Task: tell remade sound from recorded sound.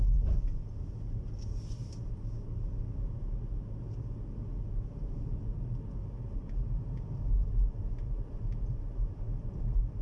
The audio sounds recorded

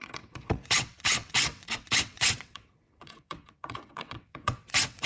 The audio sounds remade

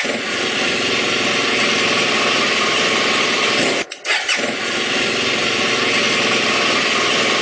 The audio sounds recorded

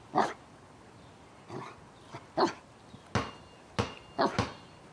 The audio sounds recorded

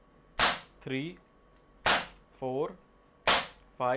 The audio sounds recorded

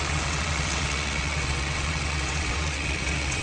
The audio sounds remade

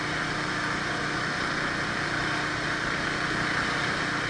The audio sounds recorded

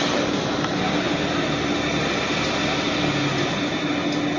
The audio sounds recorded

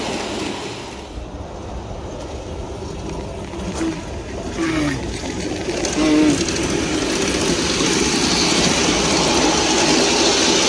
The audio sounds recorded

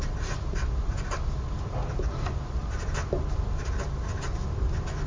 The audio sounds recorded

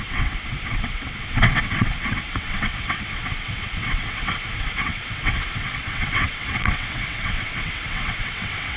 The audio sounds remade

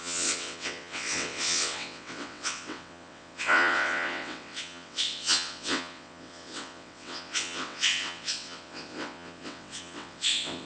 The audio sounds remade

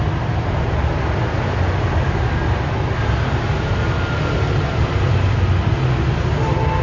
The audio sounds recorded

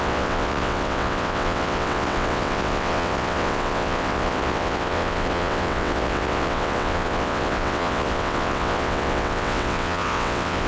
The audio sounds remade